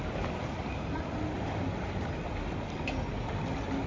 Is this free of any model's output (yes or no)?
yes